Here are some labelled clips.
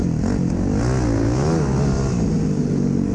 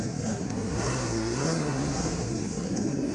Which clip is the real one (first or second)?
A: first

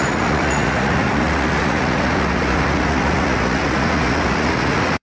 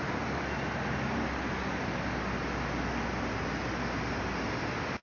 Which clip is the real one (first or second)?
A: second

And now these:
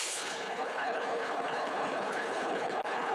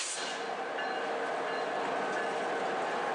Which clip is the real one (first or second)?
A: second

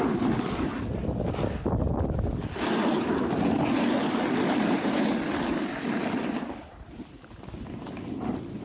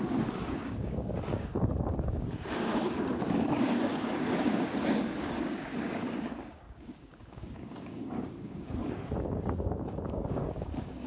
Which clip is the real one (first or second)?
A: first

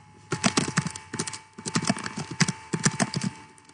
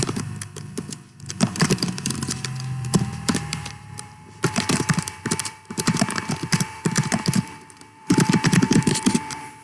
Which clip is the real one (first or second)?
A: first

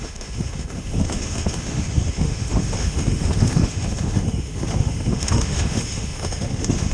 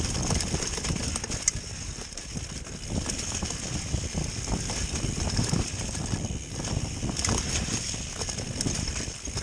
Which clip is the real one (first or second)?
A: second